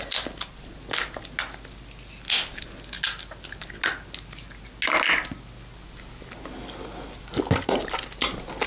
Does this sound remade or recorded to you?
recorded